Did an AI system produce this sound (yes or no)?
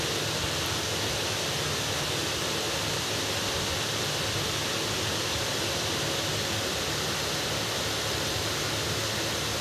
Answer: no